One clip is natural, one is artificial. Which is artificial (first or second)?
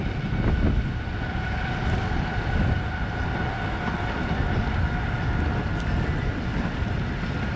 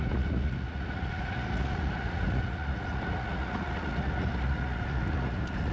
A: second